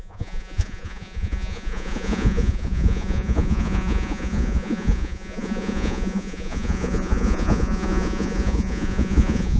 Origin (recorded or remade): remade